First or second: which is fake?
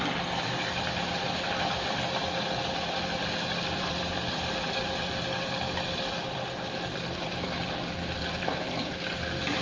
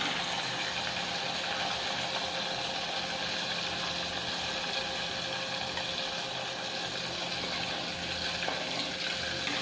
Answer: first